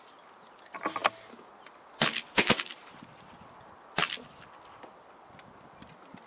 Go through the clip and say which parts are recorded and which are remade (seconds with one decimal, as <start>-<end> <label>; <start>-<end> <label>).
0.0-6.3 recorded